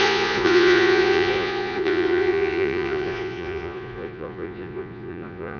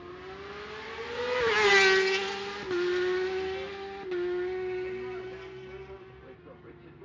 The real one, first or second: second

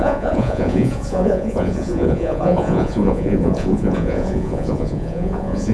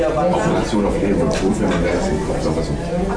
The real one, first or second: second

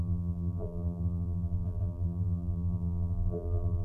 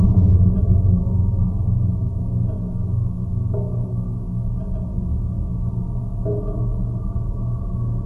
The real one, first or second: second